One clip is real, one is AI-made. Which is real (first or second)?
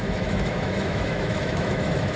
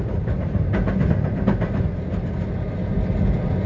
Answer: second